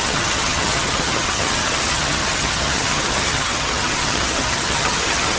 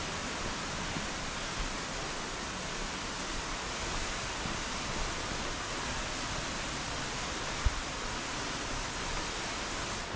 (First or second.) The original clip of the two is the second